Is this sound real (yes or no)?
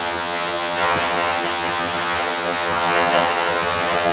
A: no